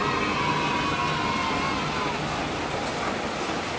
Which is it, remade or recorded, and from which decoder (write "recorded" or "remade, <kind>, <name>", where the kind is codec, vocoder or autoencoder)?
recorded